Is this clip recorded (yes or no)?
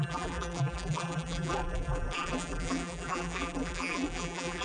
no